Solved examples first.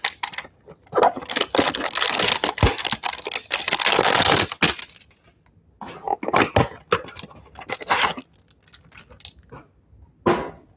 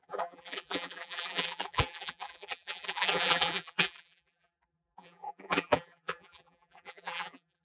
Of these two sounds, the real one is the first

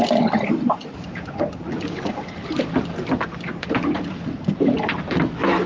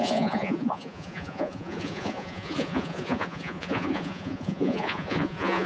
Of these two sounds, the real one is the first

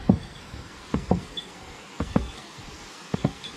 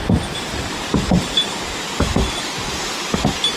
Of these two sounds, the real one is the second